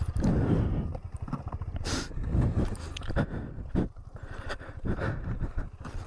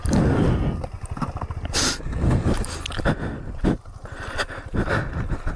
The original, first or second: second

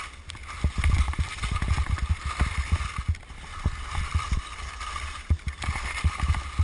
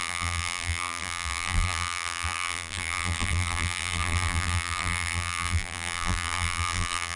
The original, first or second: first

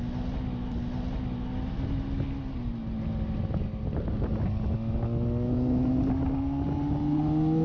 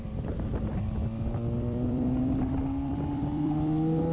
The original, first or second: first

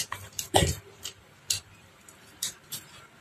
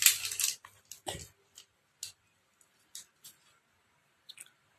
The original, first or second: second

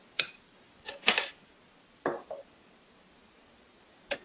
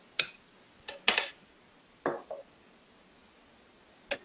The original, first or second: second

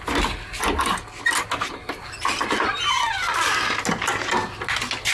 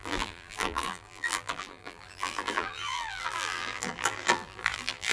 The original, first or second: first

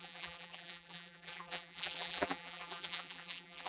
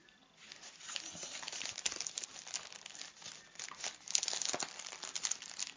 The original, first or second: second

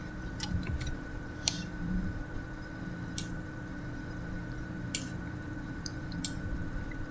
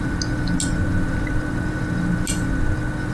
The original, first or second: second